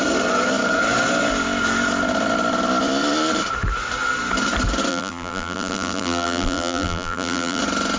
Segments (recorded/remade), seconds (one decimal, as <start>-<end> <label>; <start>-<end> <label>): 0.0-4.9 recorded; 4.9-7.6 remade; 7.6-8.0 recorded